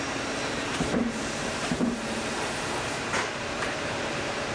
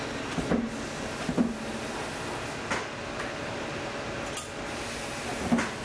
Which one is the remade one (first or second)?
first